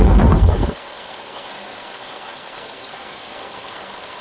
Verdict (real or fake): fake